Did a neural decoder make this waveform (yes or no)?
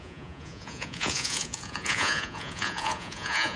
yes